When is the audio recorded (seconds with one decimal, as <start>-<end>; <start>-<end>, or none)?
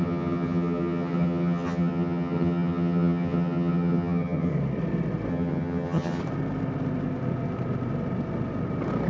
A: 4.5-5.3; 6.2-9.1